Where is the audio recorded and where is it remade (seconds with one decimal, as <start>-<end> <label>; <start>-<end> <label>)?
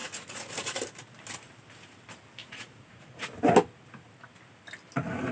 0.0-0.8 remade; 0.8-2.4 recorded; 2.4-3.2 remade; 3.2-5.3 recorded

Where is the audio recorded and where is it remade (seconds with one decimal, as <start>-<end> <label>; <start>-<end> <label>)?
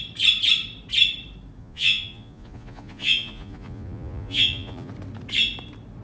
0.0-1.6 recorded; 1.6-4.9 remade; 4.9-6.0 recorded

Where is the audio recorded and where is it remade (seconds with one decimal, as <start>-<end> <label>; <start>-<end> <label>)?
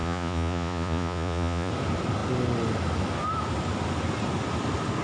0.0-1.7 remade; 1.7-5.0 recorded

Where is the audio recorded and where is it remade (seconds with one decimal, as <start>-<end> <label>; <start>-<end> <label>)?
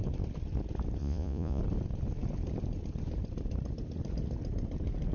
0.0-1.0 recorded; 1.0-1.6 remade; 1.6-5.1 recorded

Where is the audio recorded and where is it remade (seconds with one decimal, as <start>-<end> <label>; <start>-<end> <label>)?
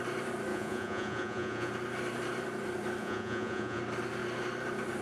0.0-0.5 recorded; 0.5-1.7 remade; 1.7-3.0 recorded; 3.0-3.8 remade; 3.8-5.0 recorded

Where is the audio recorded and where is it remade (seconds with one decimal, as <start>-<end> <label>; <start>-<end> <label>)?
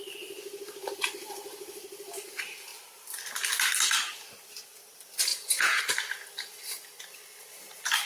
0.0-5.3 recorded; 5.3-5.8 remade; 5.8-8.1 recorded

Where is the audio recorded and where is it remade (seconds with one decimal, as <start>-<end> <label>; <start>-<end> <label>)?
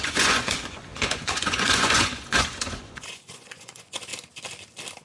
0.0-4.1 remade; 4.1-5.0 recorded